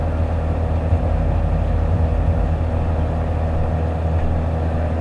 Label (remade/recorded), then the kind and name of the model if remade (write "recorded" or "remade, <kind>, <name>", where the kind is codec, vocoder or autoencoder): recorded